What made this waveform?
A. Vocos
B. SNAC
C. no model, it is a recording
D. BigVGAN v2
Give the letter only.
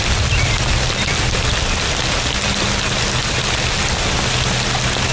C